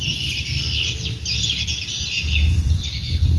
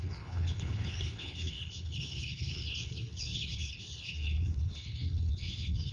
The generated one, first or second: second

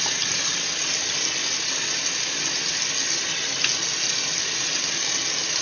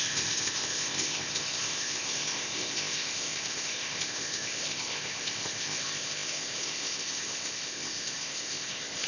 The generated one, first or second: second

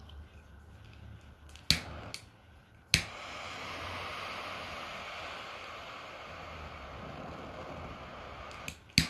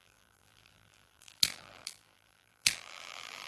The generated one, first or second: second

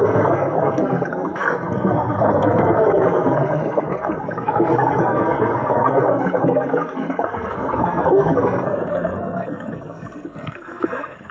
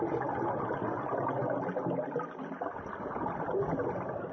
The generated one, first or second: first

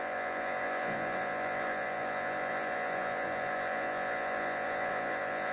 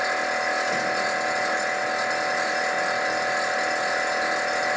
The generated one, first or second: first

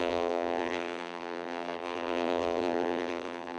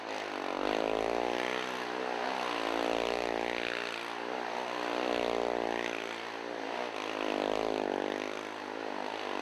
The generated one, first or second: first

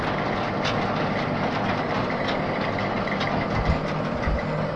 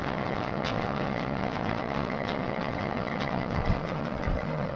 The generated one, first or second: second